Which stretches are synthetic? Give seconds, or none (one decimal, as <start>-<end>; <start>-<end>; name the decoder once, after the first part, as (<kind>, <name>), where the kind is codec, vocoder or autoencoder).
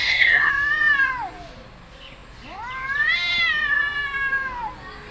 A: 0.0-0.5 (codec, SNAC)